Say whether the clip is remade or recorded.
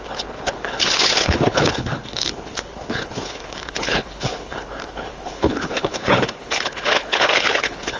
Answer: remade